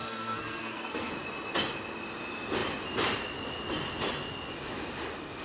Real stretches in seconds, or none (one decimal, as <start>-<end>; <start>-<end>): 1.1-5.4

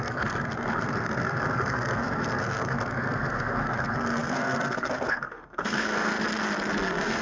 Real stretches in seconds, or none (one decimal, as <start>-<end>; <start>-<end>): 6.1-6.8

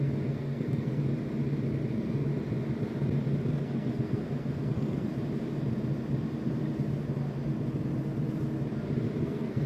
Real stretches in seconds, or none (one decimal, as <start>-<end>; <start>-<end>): 1.0-1.9; 2.3-3.5; 5.1-9.2

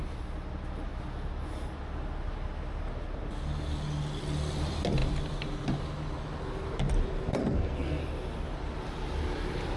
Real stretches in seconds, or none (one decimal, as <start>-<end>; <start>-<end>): 0.0-7.4; 8.0-9.8

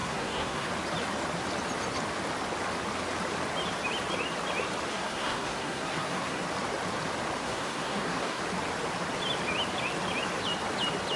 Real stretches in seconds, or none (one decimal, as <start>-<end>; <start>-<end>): 0.7-4.9; 6.4-7.4; 8.4-11.2